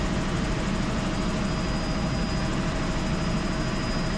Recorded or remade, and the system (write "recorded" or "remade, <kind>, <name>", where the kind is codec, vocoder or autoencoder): recorded